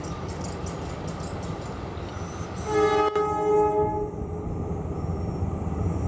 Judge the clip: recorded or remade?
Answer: recorded